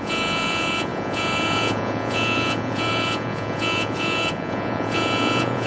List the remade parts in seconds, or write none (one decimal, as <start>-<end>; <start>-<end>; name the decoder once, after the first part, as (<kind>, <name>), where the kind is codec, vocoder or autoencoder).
0.0-5.7 (vocoder, Vocos)